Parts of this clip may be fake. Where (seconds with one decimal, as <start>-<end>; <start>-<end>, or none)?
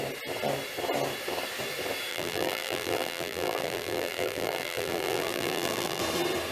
2.1-6.0